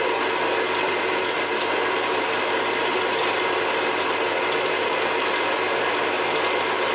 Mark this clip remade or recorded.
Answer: recorded